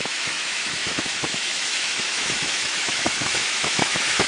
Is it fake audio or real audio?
fake